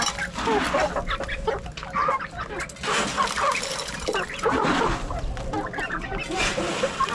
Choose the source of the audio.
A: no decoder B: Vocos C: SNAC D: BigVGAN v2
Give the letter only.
A